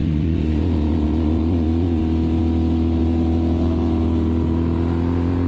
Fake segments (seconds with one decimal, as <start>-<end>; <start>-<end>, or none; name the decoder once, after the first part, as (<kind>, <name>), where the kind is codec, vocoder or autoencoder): 0.0-2.0 (vocoder, Vocos)